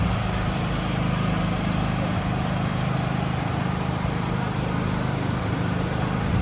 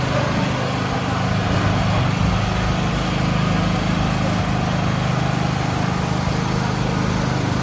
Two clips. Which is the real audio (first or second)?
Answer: second